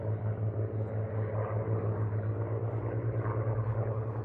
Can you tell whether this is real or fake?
real